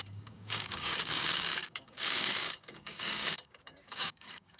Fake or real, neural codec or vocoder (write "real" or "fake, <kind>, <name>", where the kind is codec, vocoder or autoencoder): fake, codec, DAC